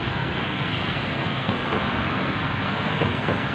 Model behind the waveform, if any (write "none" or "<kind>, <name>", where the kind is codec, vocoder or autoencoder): codec, SNAC